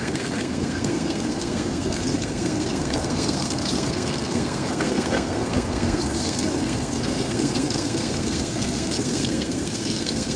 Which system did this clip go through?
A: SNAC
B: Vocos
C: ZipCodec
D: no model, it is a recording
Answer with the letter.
A